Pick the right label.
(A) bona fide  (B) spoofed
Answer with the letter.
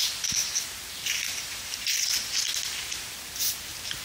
A